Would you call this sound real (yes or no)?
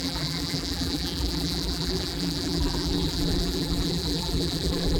no